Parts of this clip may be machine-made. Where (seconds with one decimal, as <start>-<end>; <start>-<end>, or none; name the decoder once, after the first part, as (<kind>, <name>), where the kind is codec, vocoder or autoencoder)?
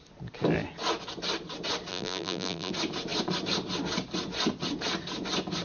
1.9-2.7 (vocoder, BigVGAN v2)